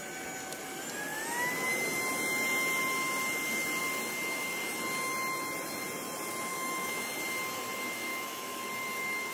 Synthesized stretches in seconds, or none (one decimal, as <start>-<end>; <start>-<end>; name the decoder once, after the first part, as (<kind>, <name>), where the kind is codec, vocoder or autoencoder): 6.5-7.1 (autoencoder, DAC-VAE); 8.1-8.6